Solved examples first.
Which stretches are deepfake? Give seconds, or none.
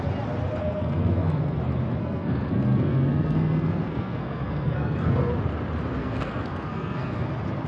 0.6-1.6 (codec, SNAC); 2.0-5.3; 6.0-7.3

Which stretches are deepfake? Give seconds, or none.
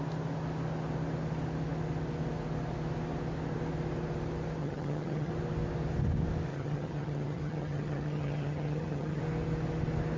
4.6-5.3 (vocoder, HiFi-GAN); 6.5-9.2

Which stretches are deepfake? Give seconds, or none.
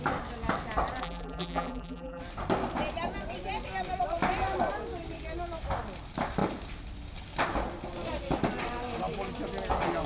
1.0-2.2 (vocoder, BigVGAN v2)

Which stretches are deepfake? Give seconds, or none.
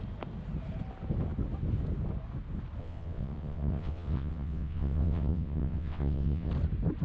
2.8-6.5 (vocoder, WaveNeXt)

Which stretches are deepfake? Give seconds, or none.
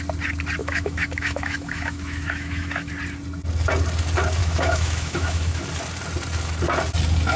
0.6-2.9 (autoencoder, DAC-VAE); 4.4-5.6